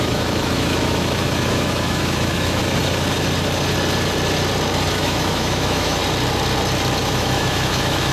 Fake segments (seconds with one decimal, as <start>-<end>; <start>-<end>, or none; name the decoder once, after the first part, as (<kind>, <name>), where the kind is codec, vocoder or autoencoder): 0.0-2.6 (autoencoder, DAC-VAE); 4.9-6.0; 7.0-8.1